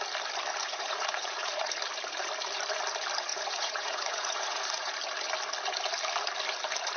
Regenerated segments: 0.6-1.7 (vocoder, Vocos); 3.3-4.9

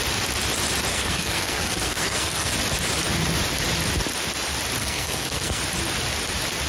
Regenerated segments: 0.9-2.5 (codec, SNAC); 4.8-5.6

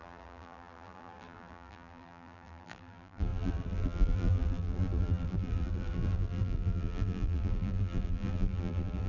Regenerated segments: 0.0-9.1 (vocoder, BigVGAN v2)

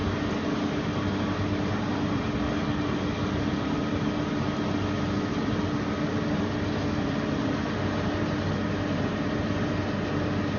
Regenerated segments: none

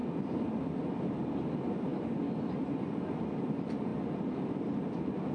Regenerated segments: none